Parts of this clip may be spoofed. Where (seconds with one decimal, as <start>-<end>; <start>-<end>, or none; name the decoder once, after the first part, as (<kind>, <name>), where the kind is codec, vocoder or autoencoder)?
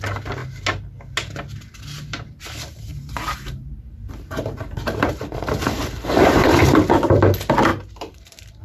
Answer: 2.9-6.8 (vocoder, BigVGAN v2); 7.7-8.6